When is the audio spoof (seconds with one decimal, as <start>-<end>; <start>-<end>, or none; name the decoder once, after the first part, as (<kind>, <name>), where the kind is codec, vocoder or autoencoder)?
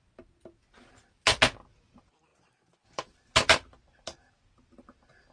none